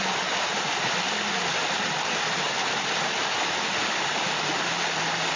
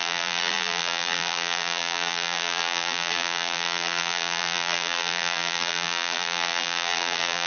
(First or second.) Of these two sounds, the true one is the first